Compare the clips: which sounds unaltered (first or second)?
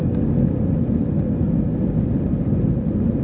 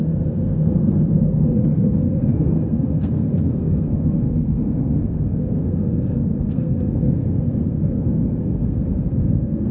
first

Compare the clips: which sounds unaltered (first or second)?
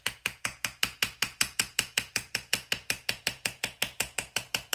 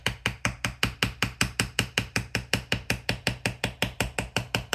second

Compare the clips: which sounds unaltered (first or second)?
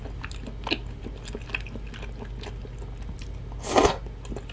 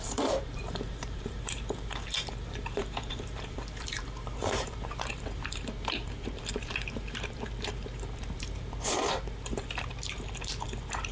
first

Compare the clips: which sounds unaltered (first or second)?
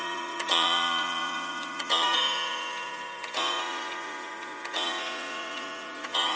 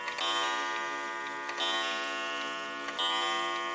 second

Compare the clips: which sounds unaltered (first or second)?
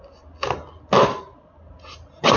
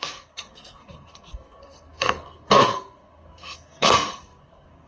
first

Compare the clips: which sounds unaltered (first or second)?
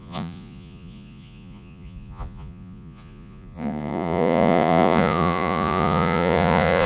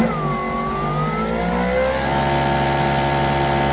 second